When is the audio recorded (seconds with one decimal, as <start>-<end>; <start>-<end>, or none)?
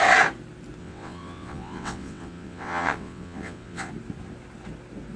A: 0.0-0.8; 3.9-5.2